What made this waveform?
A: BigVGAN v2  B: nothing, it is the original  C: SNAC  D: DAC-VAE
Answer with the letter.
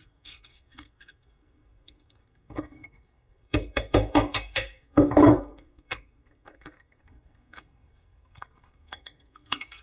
C